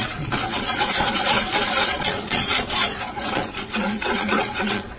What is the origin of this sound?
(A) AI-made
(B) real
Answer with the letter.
A